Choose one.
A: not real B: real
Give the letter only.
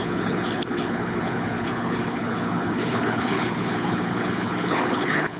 A